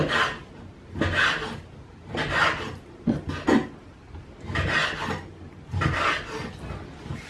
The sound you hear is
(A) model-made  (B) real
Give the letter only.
B